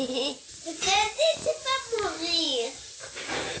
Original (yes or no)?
yes